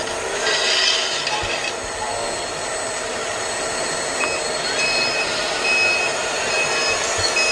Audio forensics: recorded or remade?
recorded